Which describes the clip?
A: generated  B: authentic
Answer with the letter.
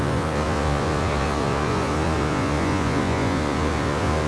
A